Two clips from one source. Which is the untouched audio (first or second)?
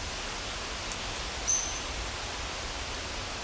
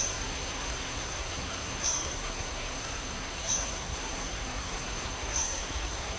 first